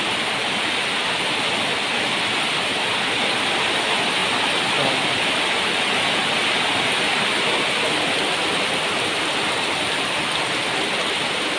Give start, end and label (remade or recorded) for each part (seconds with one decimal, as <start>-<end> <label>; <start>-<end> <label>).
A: 0.0-11.6 recorded